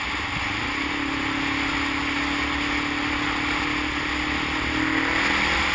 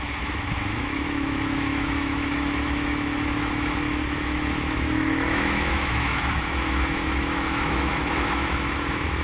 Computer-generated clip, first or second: second